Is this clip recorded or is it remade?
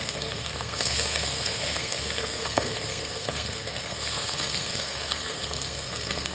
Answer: remade